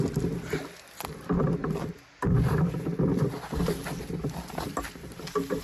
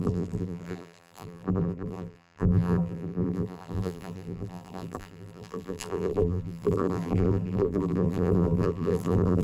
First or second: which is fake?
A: second